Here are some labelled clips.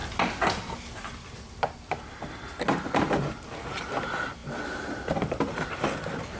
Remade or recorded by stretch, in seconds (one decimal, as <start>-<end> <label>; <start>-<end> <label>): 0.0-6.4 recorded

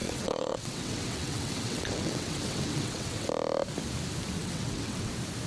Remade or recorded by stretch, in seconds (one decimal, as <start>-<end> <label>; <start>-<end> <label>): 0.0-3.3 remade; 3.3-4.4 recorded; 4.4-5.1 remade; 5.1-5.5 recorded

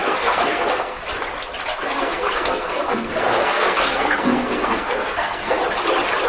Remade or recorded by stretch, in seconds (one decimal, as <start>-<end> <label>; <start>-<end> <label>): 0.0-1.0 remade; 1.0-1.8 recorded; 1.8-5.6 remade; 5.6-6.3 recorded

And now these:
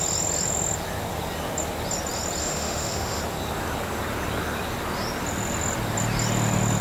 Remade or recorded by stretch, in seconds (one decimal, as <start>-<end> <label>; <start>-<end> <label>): 0.0-2.4 recorded; 2.4-3.2 remade; 3.2-6.8 recorded

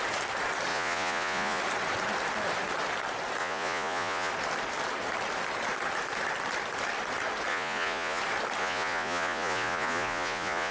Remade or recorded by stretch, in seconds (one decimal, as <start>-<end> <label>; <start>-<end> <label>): 0.0-0.7 recorded; 0.7-1.6 remade; 1.6-3.4 recorded; 3.4-4.3 remade; 4.3-7.5 recorded; 7.5-8.2 remade; 8.2-8.6 recorded; 8.6-10.7 remade